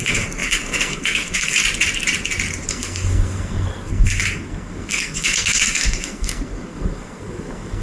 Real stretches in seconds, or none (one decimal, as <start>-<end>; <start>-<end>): 1.6-2.7